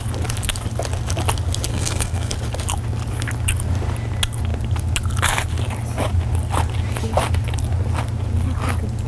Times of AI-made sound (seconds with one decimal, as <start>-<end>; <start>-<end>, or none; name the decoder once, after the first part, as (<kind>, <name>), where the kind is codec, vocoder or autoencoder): 1.7-2.3 (codec, SNAC)